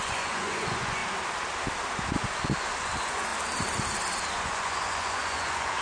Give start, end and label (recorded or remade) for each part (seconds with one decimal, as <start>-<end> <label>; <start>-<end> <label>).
0.0-1.0 remade; 1.0-2.8 recorded; 2.8-3.3 remade; 3.3-4.3 recorded; 4.3-5.8 remade